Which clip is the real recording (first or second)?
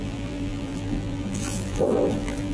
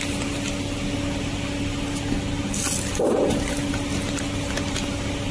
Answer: second